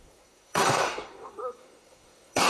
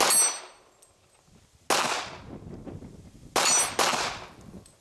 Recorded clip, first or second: second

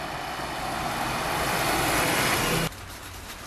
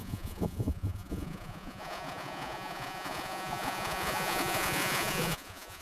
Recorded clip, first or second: first